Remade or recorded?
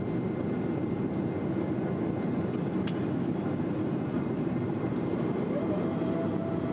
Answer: recorded